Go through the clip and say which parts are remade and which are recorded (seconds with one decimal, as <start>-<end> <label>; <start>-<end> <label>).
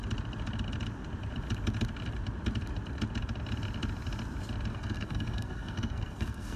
0.0-4.7 recorded; 4.7-6.6 remade